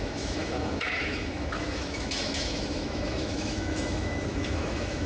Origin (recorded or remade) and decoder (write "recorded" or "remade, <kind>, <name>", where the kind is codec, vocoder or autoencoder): remade, autoencoder, DAC-VAE